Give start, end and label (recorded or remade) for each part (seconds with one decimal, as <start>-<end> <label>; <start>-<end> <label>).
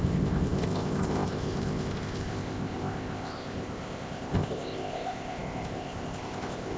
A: 0.0-6.8 remade